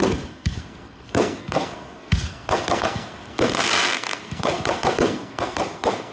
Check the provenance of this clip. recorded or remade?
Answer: remade